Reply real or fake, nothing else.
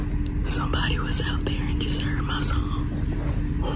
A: real